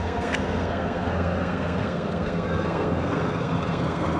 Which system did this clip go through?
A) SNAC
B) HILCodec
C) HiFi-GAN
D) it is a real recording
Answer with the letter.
A